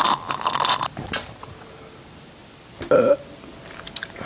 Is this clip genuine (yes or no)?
yes